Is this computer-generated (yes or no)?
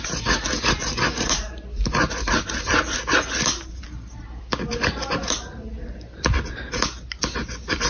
no